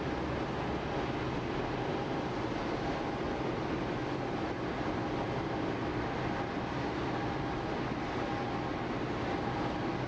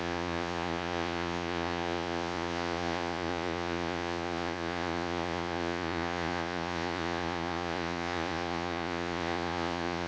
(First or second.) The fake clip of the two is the second